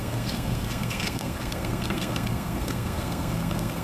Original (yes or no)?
no